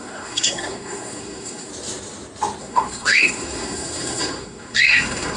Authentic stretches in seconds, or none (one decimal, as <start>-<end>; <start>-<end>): 1.7-2.6